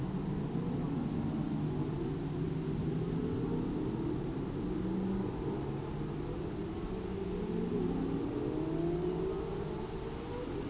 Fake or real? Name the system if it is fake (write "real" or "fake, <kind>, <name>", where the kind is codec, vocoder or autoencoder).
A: real